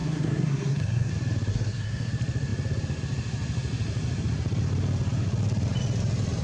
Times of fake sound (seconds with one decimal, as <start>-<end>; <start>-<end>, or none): 0.0-1.1; 1.5-2.1